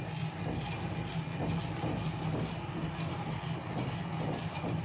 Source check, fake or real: real